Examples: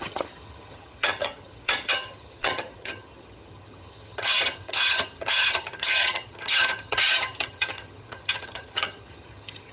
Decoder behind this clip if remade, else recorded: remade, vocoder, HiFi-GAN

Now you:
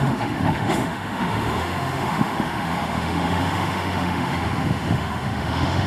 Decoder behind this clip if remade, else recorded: remade, autoencoder, DAC-VAE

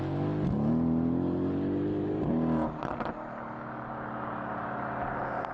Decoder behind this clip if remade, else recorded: recorded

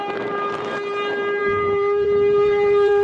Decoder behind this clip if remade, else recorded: remade, vocoder, BigVGAN v2